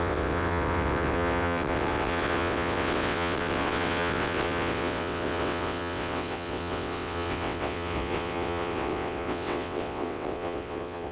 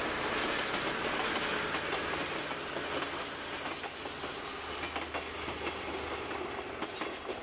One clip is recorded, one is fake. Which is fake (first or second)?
first